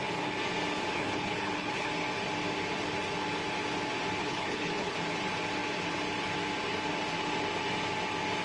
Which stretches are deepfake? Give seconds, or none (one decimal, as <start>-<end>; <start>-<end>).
0.9-1.9; 4.2-5.0